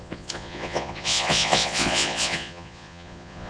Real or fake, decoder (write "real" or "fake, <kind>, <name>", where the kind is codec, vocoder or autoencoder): fake, vocoder, Vocos